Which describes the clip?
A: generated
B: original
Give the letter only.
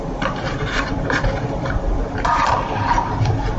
A